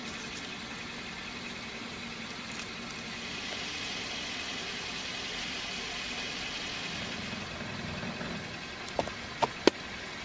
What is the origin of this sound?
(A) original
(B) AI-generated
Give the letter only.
A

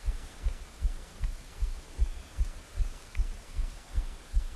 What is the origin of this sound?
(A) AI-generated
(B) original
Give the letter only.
A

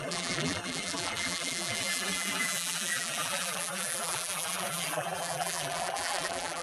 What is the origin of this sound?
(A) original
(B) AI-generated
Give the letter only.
B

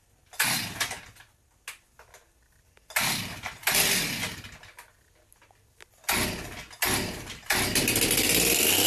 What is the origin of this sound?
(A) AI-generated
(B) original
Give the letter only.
B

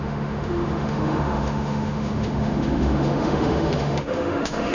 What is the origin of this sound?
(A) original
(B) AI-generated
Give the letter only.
B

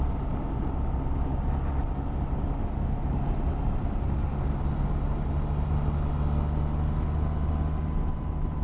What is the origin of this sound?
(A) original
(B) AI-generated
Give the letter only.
A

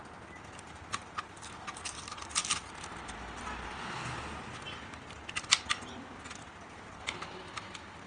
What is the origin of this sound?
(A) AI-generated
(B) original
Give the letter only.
B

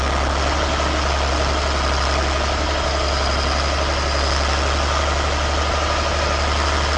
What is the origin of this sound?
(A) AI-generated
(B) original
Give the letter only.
B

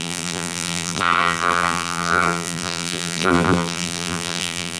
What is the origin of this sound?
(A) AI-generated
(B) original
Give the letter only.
A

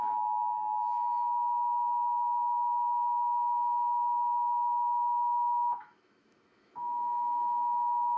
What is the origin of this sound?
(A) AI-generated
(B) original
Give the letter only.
A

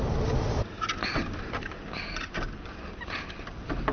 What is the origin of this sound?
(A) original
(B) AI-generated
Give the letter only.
A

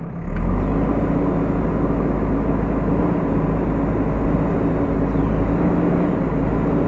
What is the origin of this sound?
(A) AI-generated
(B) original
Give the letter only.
B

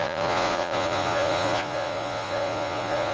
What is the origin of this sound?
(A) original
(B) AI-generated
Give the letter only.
B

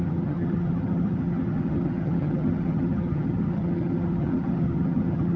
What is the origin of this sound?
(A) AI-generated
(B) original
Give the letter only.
A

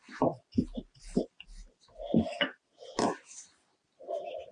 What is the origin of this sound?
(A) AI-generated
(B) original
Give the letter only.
B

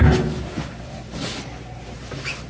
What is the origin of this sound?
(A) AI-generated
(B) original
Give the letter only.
B